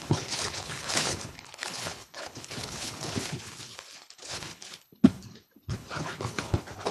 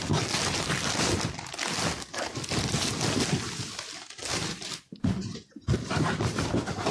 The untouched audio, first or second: second